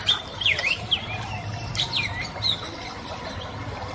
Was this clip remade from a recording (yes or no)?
no